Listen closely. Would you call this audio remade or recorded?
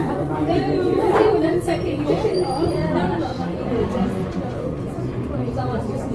remade